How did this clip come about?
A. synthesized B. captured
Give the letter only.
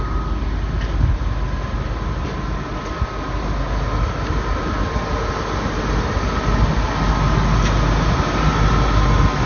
B